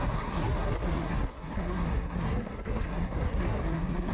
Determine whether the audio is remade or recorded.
remade